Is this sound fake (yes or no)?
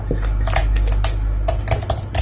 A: no